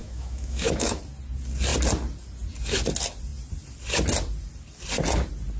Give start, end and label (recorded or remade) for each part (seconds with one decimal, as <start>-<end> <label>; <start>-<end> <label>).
0.0-1.0 remade; 1.0-5.6 recorded

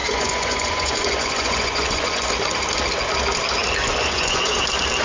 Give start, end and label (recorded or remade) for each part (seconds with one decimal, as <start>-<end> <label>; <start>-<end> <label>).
0.0-2.3 remade; 2.3-3.8 recorded; 3.8-4.6 remade; 4.6-5.0 recorded

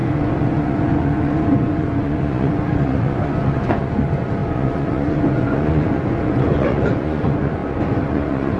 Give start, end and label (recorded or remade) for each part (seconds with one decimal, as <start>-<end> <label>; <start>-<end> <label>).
0.0-8.6 remade

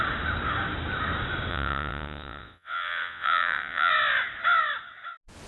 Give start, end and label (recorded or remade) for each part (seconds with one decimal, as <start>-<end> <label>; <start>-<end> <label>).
0.0-1.5 recorded; 1.5-3.9 remade; 3.9-5.5 recorded

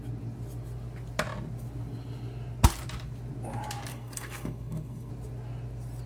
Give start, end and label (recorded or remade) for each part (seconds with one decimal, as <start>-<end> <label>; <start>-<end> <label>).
0.0-3.9 recorded; 3.9-5.1 remade; 5.1-6.1 recorded

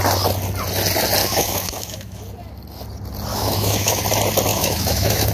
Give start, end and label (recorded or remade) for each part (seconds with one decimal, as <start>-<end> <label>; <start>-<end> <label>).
0.0-1.2 recorded; 1.2-2.2 remade; 2.2-3.3 recorded; 3.3-4.0 remade; 4.0-4.5 recorded; 4.5-5.3 remade